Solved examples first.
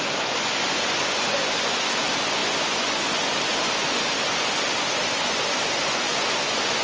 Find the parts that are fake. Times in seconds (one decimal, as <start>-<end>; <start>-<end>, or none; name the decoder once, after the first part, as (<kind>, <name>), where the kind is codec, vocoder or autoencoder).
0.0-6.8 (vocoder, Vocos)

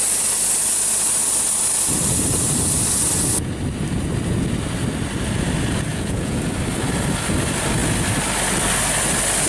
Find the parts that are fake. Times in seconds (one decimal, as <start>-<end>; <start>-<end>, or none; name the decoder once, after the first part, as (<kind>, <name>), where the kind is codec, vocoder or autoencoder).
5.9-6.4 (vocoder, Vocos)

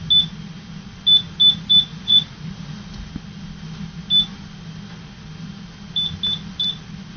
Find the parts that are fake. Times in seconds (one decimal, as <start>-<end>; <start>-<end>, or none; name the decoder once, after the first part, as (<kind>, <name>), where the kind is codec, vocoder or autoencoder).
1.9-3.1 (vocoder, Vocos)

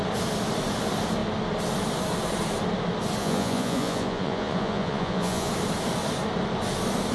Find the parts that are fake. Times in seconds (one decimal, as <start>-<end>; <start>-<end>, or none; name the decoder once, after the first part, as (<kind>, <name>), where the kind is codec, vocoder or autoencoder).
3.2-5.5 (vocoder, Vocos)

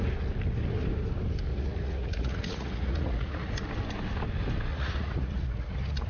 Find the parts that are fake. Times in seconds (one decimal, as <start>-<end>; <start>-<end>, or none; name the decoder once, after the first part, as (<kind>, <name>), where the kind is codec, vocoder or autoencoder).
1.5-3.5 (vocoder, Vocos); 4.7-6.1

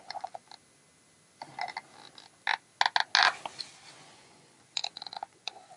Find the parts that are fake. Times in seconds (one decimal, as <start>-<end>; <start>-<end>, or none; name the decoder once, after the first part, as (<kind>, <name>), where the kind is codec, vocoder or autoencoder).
0.0-0.4 (vocoder, Vocos); 3.9-5.8

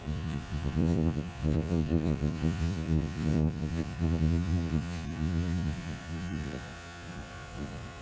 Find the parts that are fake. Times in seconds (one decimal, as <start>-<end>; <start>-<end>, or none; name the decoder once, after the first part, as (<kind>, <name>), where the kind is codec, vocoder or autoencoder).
0.0-8.0 (vocoder, Vocos)